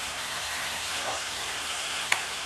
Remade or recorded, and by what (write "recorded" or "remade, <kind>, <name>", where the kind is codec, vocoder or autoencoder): remade, codec, SNAC